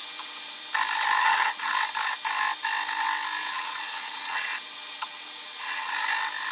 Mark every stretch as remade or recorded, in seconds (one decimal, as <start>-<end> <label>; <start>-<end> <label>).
0.0-0.6 remade; 0.6-1.2 recorded; 1.2-1.7 remade; 1.7-3.5 recorded; 3.5-5.9 remade; 5.9-6.5 recorded